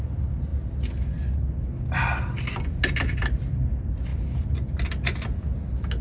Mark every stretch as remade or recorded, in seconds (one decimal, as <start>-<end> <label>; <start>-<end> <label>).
0.0-6.0 recorded